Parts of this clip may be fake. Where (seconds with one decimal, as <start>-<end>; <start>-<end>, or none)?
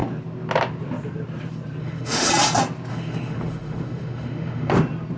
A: 1.8-2.3; 2.9-4.7